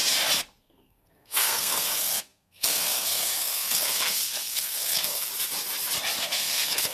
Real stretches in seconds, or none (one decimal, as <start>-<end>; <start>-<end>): 0.0-0.6; 5.3-6.2